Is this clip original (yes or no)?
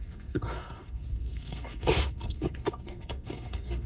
no